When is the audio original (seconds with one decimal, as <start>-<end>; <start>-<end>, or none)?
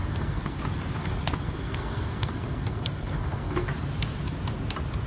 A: 0.6-1.0; 3.7-5.1